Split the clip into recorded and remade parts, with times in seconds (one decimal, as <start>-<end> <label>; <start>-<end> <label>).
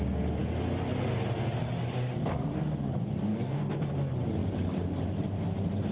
0.0-3.3 recorded; 3.3-3.9 remade; 3.9-5.9 recorded